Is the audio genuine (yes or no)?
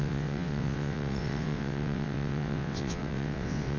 no